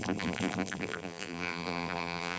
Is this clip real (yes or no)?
no